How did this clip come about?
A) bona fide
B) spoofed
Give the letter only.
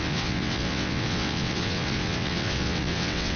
B